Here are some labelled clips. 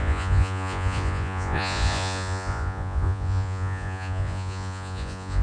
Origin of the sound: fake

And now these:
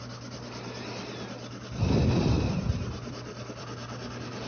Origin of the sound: real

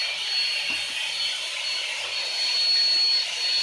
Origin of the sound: real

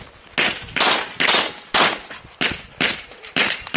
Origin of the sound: real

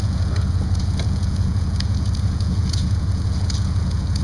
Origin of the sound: fake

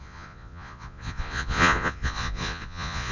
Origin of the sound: fake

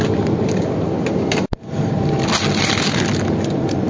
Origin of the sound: real